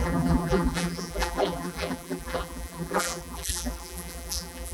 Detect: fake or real fake